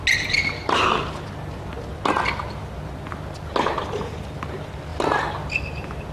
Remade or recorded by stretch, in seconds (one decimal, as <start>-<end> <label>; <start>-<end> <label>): 0.0-6.1 recorded